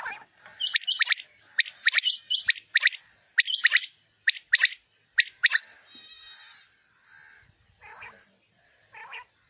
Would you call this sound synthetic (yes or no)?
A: no